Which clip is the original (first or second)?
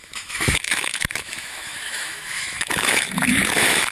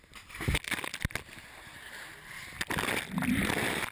second